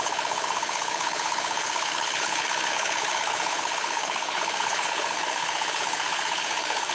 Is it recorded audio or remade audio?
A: remade